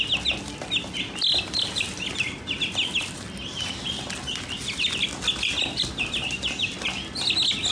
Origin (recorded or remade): recorded